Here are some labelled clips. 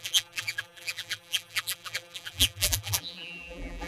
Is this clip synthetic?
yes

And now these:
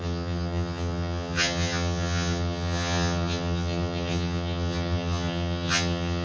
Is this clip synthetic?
yes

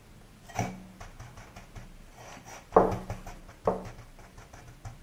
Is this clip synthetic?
no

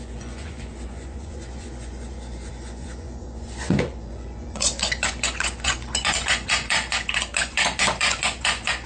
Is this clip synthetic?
yes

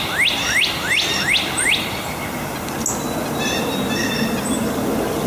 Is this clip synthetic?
no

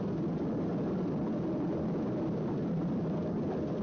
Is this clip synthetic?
no